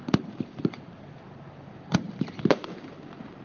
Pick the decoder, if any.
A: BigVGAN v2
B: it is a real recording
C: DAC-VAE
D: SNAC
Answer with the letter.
A